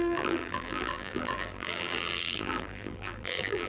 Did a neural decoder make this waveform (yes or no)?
yes